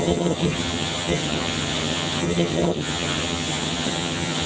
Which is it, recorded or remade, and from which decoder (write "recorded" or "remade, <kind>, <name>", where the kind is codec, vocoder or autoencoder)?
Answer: remade, vocoder, HiFi-GAN